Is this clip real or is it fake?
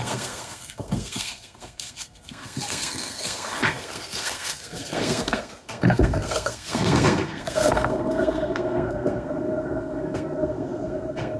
fake